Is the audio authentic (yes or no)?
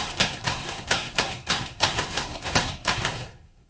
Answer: no